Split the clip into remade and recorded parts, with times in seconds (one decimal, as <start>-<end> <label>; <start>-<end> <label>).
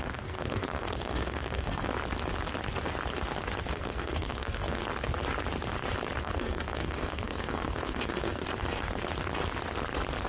0.0-1.9 remade; 1.9-3.7 recorded; 3.7-4.8 remade; 4.8-6.2 recorded; 6.2-8.4 remade; 8.4-10.3 recorded